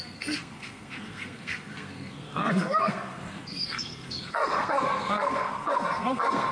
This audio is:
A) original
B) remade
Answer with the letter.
B